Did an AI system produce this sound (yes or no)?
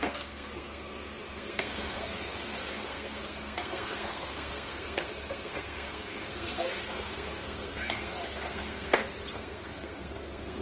yes